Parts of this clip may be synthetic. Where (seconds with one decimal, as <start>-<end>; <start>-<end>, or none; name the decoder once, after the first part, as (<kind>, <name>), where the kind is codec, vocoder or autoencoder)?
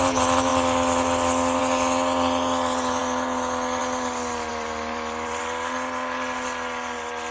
4.5-5.4 (vocoder, BigVGAN v2)